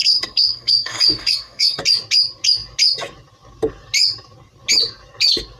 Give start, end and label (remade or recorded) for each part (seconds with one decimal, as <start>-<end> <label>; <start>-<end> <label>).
0.0-1.8 remade; 1.8-5.6 recorded